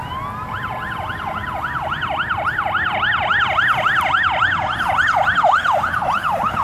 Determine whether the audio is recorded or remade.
remade